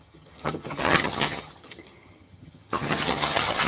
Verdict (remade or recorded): remade